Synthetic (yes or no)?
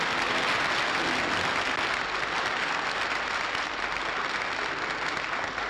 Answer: no